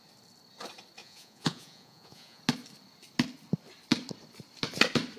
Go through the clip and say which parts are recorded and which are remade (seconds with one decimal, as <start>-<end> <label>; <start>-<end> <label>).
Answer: 0.0-1.0 recorded; 1.0-2.4 remade; 2.4-5.2 recorded